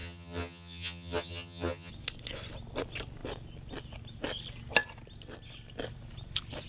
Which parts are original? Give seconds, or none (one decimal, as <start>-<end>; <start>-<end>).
1.9-6.7